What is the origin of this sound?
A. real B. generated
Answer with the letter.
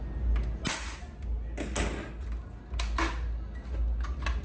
A